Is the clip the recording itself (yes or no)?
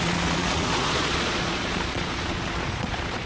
no